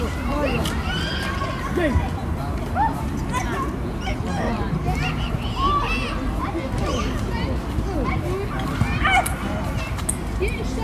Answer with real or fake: real